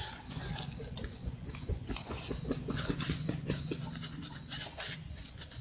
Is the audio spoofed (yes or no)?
yes